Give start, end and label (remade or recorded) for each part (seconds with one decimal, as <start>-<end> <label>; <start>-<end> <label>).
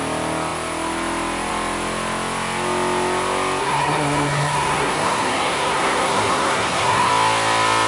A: 0.0-3.6 recorded; 3.6-7.1 remade; 7.1-7.9 recorded